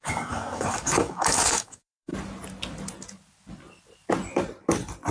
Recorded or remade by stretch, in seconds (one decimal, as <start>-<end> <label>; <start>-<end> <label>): 0.0-2.1 remade; 2.1-5.1 recorded

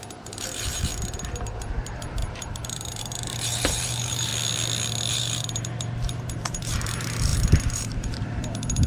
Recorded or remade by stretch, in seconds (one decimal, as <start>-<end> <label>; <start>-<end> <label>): 0.0-0.9 remade; 0.9-1.5 recorded; 1.5-4.3 remade; 4.3-5.1 recorded; 5.1-8.9 remade

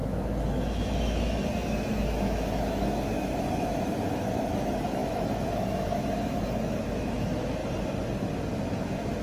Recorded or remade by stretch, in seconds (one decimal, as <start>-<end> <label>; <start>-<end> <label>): 0.0-7.6 remade; 7.6-8.7 recorded; 8.7-9.2 remade

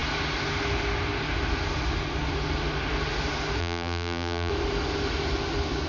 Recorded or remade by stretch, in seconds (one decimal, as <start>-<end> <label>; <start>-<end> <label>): 0.0-3.6 recorded; 3.6-4.5 remade; 4.5-5.9 recorded